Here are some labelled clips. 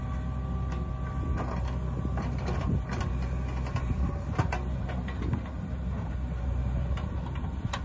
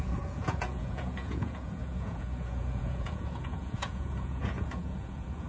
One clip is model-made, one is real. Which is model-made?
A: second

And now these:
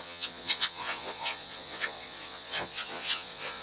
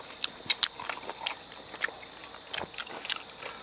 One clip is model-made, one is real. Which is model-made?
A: first